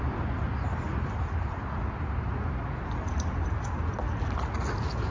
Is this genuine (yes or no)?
yes